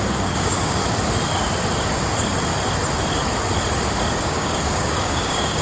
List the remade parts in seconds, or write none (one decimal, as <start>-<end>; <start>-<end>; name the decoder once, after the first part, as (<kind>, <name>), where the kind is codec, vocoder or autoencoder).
0.0-0.8 (codec, DAC); 4.2-5.6